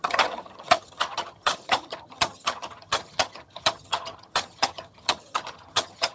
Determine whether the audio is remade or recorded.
remade